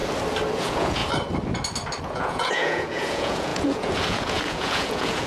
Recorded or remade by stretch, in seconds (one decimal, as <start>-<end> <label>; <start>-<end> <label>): 0.0-0.5 recorded; 0.5-1.0 remade; 1.0-2.0 recorded; 2.0-5.3 remade